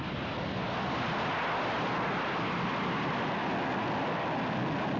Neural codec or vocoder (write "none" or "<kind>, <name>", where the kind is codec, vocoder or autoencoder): none